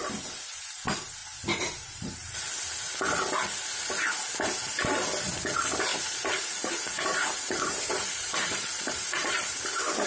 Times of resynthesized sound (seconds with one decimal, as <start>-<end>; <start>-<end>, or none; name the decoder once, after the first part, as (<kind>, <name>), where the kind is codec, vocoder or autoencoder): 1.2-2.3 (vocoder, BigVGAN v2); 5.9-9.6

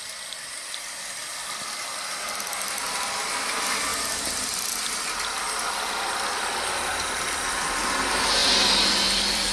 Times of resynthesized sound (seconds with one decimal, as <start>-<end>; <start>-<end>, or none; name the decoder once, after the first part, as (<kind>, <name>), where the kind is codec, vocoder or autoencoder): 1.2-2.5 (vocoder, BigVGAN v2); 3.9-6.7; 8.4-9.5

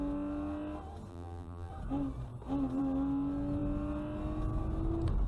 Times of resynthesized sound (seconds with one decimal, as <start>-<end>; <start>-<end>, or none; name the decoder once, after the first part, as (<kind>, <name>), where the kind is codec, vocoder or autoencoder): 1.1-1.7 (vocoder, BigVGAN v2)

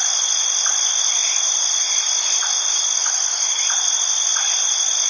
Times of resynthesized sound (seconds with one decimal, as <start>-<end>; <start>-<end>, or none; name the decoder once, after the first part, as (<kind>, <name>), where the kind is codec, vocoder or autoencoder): none

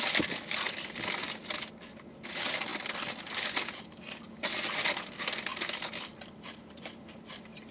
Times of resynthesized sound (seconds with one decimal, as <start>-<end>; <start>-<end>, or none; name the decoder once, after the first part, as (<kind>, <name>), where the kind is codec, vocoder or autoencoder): none